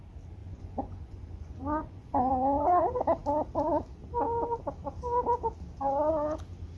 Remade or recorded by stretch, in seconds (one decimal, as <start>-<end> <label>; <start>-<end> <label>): 0.0-0.4 recorded; 0.4-2.3 remade; 2.3-6.8 recorded